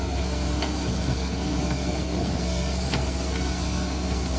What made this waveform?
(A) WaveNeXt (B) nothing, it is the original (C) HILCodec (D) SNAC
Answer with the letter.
D